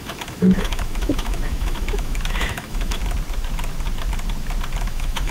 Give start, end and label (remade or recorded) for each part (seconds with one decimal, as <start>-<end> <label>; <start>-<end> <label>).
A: 0.0-3.0 remade; 3.0-4.8 recorded; 4.8-5.3 remade